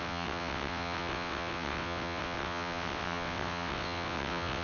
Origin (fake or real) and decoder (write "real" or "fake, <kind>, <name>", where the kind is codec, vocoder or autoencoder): fake, vocoder, WaveNeXt